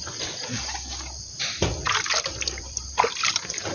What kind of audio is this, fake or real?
fake